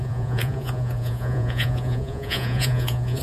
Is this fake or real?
fake